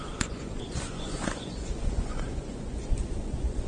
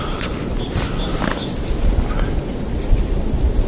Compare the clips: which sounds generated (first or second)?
first